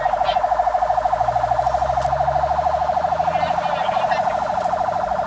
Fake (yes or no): no